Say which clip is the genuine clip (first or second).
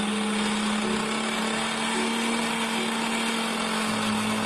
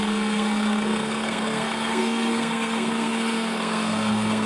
first